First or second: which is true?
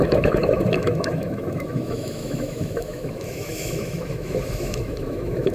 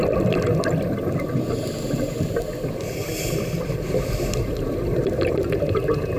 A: second